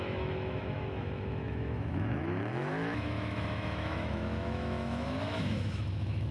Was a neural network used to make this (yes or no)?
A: yes